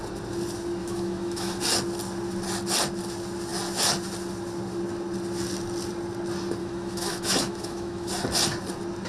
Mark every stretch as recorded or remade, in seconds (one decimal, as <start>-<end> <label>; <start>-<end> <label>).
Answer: 0.0-0.8 recorded; 0.8-1.6 remade; 1.6-6.6 recorded; 6.6-8.1 remade; 8.1-9.1 recorded